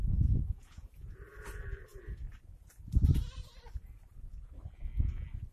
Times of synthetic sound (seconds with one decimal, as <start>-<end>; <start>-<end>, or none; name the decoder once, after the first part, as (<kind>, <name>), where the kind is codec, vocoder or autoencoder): 0.0-1.2 (vocoder, Vocos)